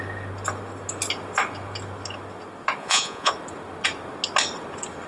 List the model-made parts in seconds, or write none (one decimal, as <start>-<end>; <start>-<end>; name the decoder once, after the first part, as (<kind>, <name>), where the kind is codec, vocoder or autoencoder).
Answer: 2.8-3.3 (vocoder, Vocos)